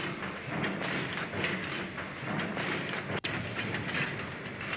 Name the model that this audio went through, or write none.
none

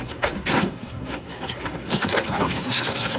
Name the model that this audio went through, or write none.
codec, SNAC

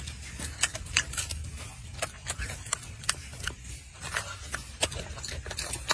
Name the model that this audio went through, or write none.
none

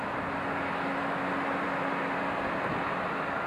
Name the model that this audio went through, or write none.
none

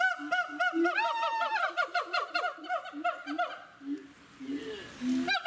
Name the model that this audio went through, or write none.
none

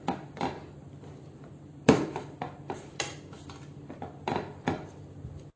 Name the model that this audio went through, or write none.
vocoder, BigVGAN v2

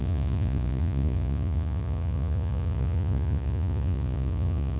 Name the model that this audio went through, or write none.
vocoder, Vocos